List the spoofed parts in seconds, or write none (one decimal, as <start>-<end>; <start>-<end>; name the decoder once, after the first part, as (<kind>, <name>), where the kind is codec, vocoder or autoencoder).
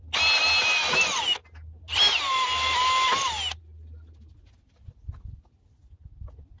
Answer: none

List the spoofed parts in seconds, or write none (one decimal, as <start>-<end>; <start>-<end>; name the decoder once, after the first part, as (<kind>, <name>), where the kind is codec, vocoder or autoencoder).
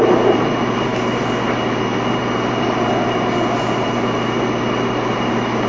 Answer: none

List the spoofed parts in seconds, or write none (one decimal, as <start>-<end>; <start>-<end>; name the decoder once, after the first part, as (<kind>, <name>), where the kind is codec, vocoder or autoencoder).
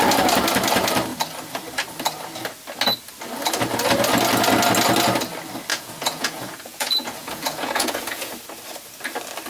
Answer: 5.7-8.3 (vocoder, Vocos)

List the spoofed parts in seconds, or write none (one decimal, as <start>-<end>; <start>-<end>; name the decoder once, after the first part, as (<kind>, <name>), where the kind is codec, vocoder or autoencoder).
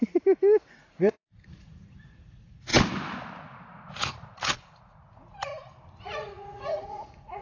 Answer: 0.0-2.7 (vocoder, Vocos); 3.4-5.5; 6.0-7.4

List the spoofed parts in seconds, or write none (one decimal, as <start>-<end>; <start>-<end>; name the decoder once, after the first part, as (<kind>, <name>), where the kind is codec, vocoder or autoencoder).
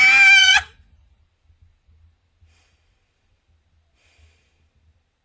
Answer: 0.4-1.2 (vocoder, Vocos)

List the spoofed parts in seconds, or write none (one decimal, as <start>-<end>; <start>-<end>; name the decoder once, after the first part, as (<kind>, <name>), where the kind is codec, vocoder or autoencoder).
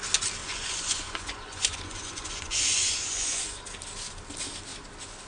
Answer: 0.4-3.6 (vocoder, Vocos)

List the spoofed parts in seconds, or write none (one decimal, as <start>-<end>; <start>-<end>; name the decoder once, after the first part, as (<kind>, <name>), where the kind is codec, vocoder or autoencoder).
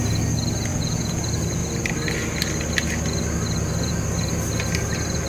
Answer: 0.7-1.2 (vocoder, Vocos)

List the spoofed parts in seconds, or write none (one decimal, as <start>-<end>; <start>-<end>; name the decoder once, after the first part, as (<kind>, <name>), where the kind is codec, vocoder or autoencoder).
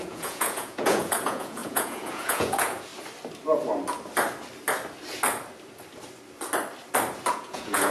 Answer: 0.0-2.9 (vocoder, Vocos); 7.3-7.9